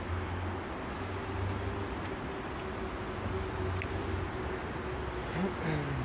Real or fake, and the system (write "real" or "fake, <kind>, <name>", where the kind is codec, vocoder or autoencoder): real